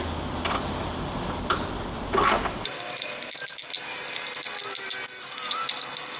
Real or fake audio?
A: real